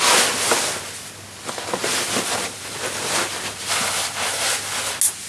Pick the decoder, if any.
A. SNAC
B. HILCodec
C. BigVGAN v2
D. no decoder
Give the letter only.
D